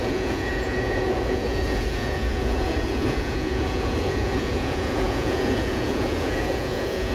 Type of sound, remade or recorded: remade